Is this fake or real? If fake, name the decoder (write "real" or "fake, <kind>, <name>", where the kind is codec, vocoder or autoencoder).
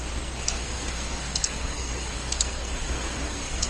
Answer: fake, codec, SNAC